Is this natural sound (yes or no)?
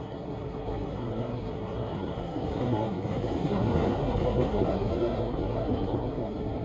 no